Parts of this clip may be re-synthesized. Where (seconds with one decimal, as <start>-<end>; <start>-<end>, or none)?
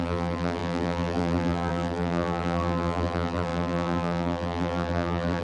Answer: 0.0-5.4